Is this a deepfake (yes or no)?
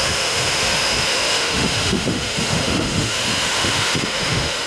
yes